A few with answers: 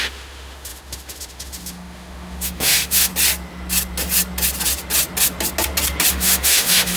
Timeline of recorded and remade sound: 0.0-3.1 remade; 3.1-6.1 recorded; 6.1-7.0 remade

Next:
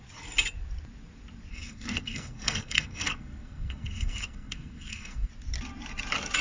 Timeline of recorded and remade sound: 0.0-1.5 recorded; 1.5-5.3 remade; 5.3-6.4 recorded

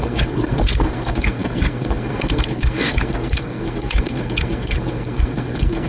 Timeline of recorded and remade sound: 0.0-5.9 remade

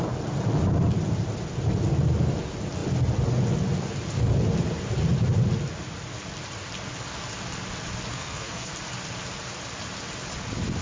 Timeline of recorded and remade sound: 0.0-8.1 recorded; 8.1-8.7 remade; 8.7-10.8 recorded